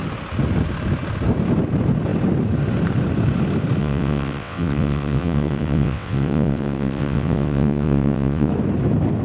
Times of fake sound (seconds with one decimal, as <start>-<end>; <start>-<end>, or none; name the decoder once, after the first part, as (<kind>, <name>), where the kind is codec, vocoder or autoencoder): 3.8-8.5 (vocoder, WaveNeXt)